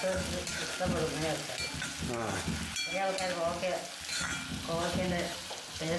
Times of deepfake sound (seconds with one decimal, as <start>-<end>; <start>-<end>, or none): none